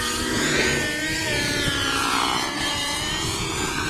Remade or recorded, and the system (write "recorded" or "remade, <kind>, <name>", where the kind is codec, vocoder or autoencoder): remade, vocoder, Vocos